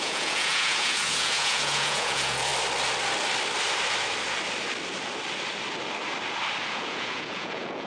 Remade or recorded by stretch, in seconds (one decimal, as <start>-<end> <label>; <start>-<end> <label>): 0.0-2.5 remade; 2.5-6.7 recorded; 6.7-7.9 remade